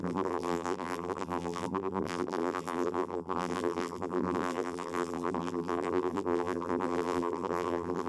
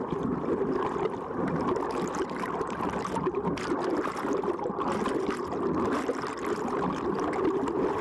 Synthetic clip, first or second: first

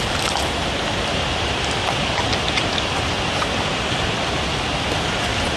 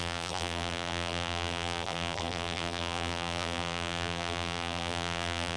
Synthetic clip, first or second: second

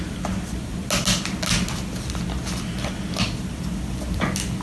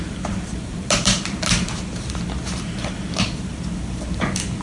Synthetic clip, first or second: second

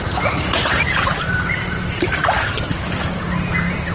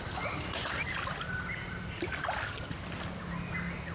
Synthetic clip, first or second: first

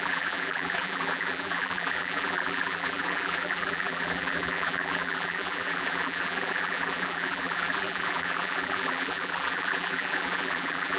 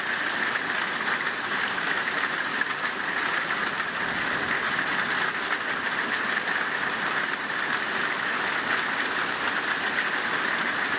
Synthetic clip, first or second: first